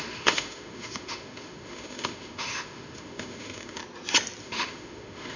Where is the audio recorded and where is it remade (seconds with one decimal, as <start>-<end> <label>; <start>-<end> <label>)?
0.0-3.8 remade; 3.8-4.4 recorded; 4.4-5.4 remade